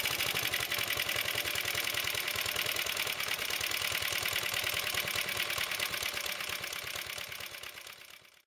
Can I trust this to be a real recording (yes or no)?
yes